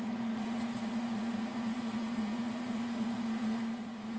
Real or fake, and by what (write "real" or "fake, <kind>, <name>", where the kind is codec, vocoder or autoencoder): fake, vocoder, Vocos